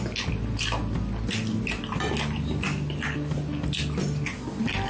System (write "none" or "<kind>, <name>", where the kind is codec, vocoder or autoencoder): none